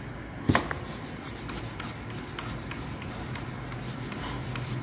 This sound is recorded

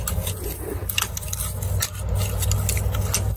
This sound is recorded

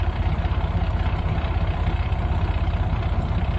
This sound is remade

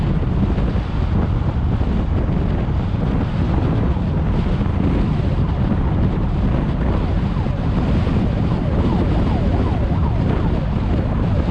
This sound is recorded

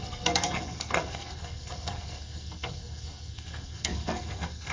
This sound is remade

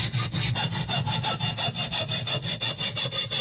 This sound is recorded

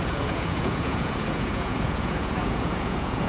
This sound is remade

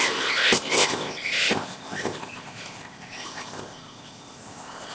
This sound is remade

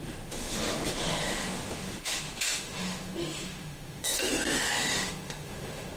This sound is remade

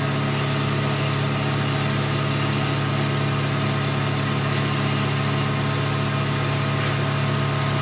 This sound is recorded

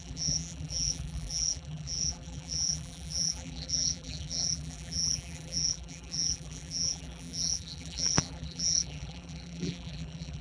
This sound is remade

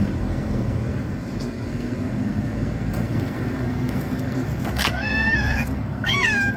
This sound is remade